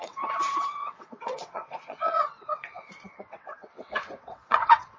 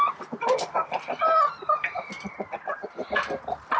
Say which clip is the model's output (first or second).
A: first